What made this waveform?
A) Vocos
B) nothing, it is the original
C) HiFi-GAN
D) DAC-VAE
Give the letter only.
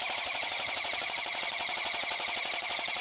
A